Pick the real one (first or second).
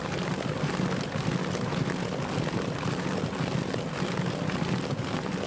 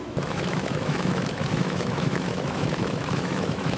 first